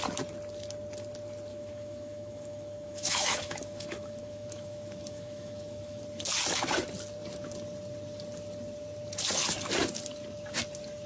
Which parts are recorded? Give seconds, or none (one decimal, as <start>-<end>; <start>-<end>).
0.0-1.5; 6.0-11.1